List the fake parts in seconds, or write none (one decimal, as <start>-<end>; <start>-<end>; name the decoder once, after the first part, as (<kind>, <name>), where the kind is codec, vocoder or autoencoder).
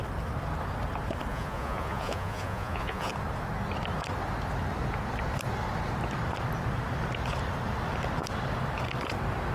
1.3-3.1 (vocoder, Vocos)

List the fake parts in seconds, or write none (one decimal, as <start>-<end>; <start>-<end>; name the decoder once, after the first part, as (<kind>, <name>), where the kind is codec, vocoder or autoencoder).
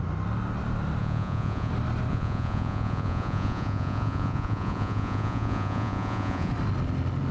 1.0-1.7 (vocoder, Vocos); 2.1-6.5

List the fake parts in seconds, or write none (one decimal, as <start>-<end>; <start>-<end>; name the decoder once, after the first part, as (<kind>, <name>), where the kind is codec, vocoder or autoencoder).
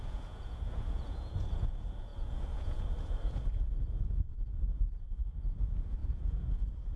0.0-4.3 (vocoder, Vocos); 4.9-7.0